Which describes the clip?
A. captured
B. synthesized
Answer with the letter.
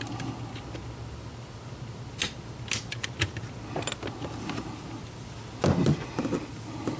A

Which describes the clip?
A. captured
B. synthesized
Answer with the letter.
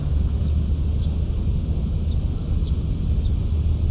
A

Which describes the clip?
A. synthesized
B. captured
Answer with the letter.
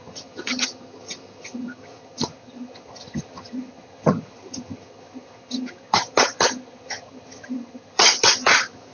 A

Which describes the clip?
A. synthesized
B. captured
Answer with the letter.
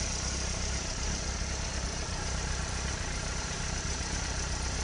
B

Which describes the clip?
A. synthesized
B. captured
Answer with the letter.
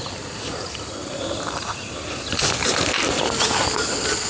B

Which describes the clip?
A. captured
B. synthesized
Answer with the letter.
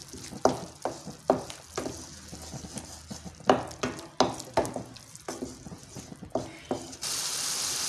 A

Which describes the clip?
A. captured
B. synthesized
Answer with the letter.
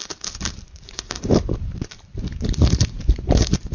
B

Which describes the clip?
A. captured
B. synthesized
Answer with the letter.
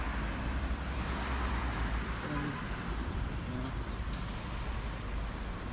A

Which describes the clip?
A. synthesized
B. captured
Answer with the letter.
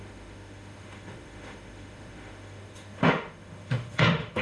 A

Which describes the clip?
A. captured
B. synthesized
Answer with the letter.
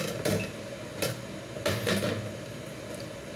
A